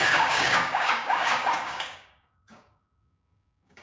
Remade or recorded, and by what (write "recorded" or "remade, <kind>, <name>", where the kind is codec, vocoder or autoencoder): remade, codec, DAC